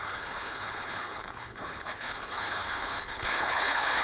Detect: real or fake fake